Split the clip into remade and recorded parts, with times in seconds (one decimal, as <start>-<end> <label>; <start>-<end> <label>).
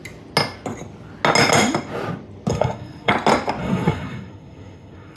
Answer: 0.0-2.5 recorded; 2.5-3.1 remade; 3.1-3.6 recorded; 3.6-5.2 remade